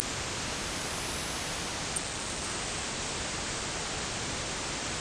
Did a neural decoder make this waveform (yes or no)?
no